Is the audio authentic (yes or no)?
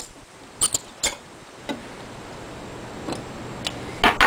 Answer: yes